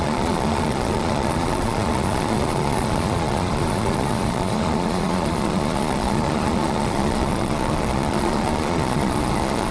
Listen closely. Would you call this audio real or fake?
fake